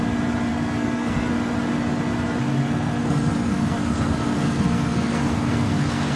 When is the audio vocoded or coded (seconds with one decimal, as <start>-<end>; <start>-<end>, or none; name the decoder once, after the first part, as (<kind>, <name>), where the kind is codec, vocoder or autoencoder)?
0.5-1.3 (codec, SNAC); 2.5-6.2